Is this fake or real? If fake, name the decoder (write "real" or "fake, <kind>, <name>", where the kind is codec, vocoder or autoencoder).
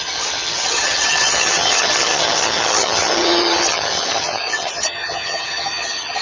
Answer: fake, vocoder, HiFi-GAN